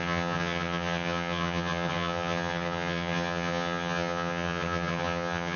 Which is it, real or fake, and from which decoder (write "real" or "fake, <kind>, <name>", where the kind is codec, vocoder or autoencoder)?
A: fake, vocoder, HiFi-GAN